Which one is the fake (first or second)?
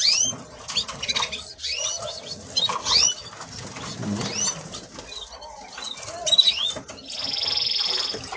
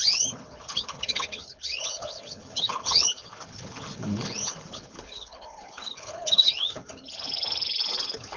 second